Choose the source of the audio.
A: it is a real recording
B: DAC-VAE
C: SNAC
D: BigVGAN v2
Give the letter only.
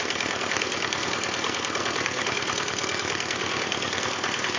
C